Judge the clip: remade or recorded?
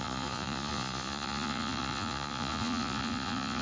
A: remade